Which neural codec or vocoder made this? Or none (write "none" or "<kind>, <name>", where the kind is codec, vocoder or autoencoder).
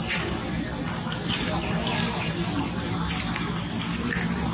none